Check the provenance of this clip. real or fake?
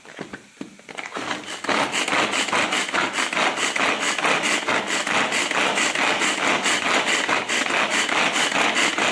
real